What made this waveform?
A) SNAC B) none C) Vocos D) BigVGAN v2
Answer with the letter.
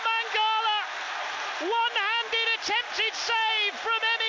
B